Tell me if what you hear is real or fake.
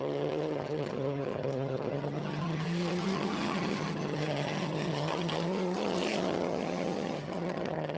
fake